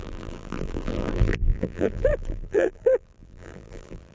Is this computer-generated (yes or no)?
yes